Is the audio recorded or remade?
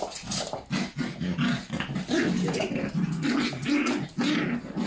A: recorded